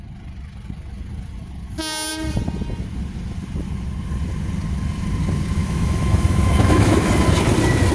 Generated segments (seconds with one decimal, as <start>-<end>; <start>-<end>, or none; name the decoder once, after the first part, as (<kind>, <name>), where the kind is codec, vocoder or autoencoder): 5.6-7.1 (autoencoder, DAC-VAE)